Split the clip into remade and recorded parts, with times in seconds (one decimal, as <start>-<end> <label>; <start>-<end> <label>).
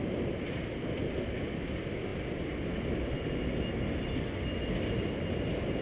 0.0-5.8 recorded